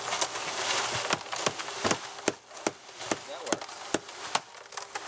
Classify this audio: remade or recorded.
recorded